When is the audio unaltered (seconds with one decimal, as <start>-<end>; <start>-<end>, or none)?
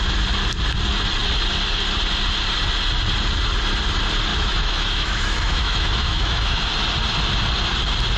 0.0-4.3; 6.7-8.2